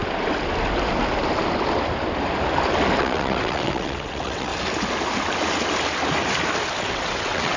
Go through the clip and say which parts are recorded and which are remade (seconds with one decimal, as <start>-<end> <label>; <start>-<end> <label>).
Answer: 0.0-3.0 recorded; 3.0-4.5 remade; 4.5-6.8 recorded; 6.8-7.6 remade

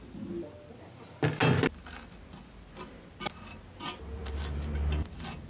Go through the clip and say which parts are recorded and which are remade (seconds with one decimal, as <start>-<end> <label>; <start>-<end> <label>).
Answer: 0.0-5.5 recorded

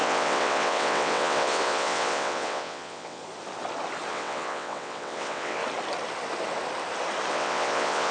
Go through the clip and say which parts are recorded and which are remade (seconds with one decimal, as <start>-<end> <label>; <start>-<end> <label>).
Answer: 0.0-3.2 remade; 3.2-4.1 recorded; 4.1-5.6 remade; 5.6-7.3 recorded; 7.3-8.1 remade

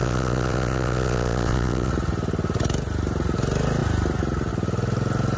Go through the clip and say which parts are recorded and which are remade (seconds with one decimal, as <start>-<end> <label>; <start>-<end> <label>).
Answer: 0.0-1.9 remade; 1.9-5.4 recorded

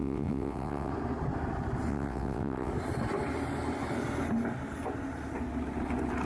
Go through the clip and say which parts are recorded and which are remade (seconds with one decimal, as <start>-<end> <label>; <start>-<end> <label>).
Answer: 0.0-0.9 remade; 0.9-1.9 recorded; 1.9-2.7 remade; 2.7-6.3 recorded

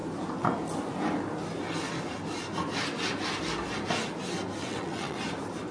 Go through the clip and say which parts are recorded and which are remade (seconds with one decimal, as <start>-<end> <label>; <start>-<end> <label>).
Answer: 0.0-4.6 recorded; 4.6-5.2 remade; 5.2-5.7 recorded

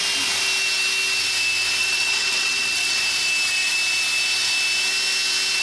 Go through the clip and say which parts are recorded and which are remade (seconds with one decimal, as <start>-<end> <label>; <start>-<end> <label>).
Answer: 0.0-1.8 recorded; 1.8-3.0 remade; 3.0-5.6 recorded